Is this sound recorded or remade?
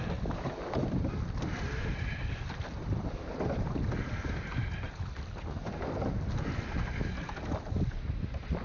recorded